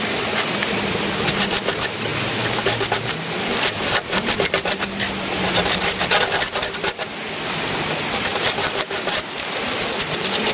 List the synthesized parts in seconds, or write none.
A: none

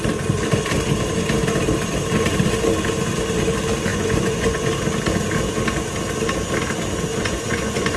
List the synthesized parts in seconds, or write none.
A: 3.9-4.7 (vocoder, Vocos); 7.1-8.0

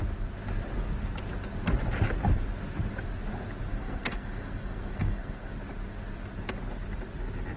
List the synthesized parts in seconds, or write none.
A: 3.7-5.5 (codec, SNAC)

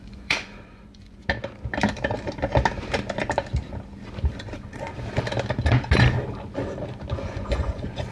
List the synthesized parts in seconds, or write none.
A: 0.0-1.2 (vocoder, Vocos); 4.3-4.9; 7.1-8.1

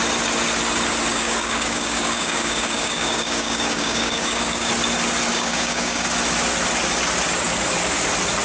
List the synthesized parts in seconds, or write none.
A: 1.1-4.7 (codec, DAC); 5.3-6.1